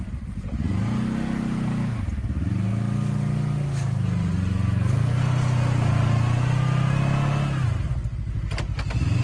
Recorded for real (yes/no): yes